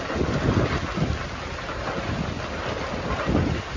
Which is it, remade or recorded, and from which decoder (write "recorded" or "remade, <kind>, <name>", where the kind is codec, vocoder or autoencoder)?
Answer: recorded